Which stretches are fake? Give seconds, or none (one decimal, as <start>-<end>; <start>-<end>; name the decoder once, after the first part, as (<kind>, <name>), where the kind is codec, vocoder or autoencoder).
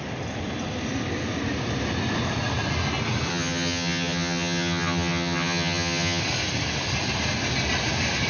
3.3-6.2 (vocoder, HiFi-GAN)